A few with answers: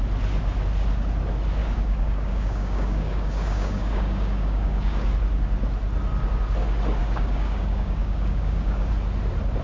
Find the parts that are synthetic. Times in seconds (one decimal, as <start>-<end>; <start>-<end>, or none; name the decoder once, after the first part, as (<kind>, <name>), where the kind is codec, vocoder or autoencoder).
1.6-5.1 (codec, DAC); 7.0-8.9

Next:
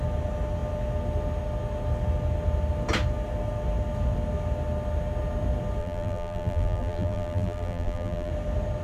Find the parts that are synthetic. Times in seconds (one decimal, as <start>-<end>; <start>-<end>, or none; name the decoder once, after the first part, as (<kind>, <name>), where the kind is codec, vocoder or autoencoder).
5.8-8.3 (vocoder, BigVGAN v2)

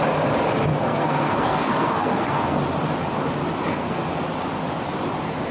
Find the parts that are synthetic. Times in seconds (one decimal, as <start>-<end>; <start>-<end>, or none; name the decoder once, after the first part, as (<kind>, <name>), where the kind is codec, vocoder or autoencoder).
0.7-2.6 (codec, SNAC); 3.7-4.2

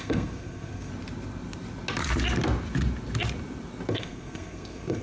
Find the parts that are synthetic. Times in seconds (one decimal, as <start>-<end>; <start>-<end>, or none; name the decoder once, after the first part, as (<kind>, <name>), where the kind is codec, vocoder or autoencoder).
0.0-0.9 (codec, SNAC); 3.9-5.0

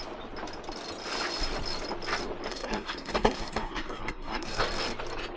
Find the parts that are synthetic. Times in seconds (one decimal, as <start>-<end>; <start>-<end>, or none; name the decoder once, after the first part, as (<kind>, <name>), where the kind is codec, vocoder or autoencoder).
2.5-4.6 (codec, SNAC)

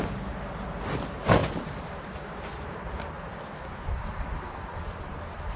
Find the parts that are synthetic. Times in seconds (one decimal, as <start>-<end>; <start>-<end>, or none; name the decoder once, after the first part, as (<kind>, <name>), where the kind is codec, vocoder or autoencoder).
1.4-2.9 (vocoder, BigVGAN v2)

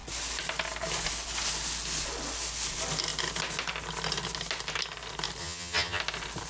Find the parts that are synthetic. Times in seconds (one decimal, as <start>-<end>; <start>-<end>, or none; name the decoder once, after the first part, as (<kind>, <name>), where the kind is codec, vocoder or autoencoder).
5.4-6.0 (vocoder, HiFi-GAN)

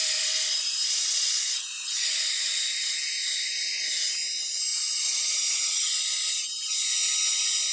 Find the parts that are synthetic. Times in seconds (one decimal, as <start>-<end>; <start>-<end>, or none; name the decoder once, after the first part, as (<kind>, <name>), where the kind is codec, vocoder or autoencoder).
0.0-2.4 (vocoder, Vocos); 4.7-5.9